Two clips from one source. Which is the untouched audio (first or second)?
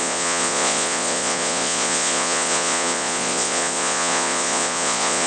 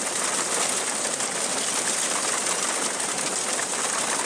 second